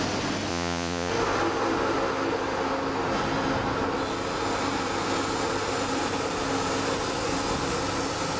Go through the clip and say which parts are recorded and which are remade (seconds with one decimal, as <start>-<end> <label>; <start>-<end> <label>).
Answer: 0.0-0.5 recorded; 0.5-1.1 remade; 1.1-8.4 recorded